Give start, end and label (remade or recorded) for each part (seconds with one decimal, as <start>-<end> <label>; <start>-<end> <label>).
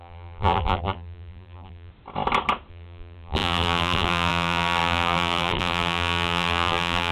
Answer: 0.0-1.9 remade; 1.9-2.7 recorded; 2.7-7.1 remade